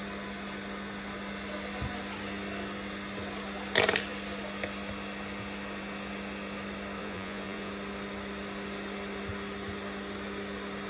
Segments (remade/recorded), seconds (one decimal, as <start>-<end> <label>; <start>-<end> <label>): 0.0-7.0 recorded; 7.0-7.7 remade; 7.7-10.9 recorded

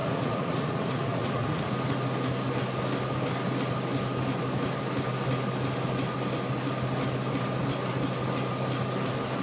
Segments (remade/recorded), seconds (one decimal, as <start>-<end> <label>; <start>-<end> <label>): 0.0-1.7 remade; 1.7-9.4 recorded

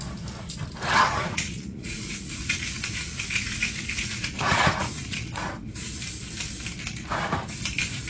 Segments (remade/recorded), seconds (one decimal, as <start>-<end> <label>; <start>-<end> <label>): 0.0-1.2 recorded; 1.2-5.5 remade; 5.5-8.1 recorded

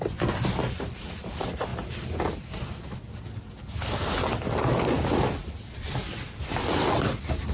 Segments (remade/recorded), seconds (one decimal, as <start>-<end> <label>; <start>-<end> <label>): 0.0-7.5 recorded

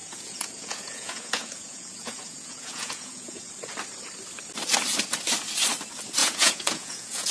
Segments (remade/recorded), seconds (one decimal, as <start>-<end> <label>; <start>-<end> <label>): 0.0-3.5 remade; 3.5-6.2 recorded; 6.2-7.3 remade

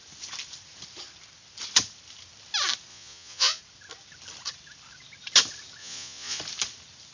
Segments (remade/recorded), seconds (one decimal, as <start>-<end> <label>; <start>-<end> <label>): 0.0-2.9 recorded; 2.9-3.6 remade; 3.6-5.8 recorded; 5.8-6.4 remade; 6.4-7.1 recorded

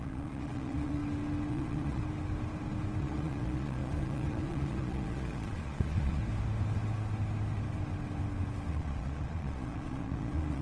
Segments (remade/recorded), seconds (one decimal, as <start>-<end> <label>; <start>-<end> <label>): 0.0-1.0 remade; 1.0-1.5 recorded; 1.5-2.0 remade; 2.0-3.0 recorded; 3.0-6.2 remade; 6.2-8.7 recorded; 8.7-10.6 remade